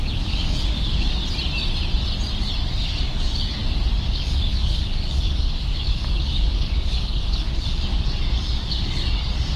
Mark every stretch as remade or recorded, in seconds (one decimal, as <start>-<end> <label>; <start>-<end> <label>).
0.0-1.2 remade; 1.2-2.7 recorded; 2.7-9.6 remade